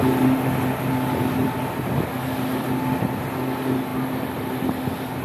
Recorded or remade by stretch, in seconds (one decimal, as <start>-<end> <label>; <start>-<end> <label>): 0.0-1.4 recorded; 1.4-1.9 remade; 1.9-5.2 recorded